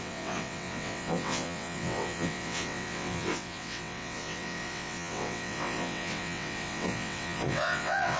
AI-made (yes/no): yes